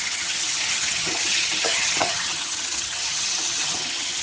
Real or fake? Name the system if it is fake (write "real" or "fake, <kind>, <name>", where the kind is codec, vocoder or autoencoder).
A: fake, vocoder, HiFi-GAN